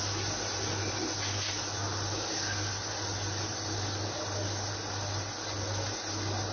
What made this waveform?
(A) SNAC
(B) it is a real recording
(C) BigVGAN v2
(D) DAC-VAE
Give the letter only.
B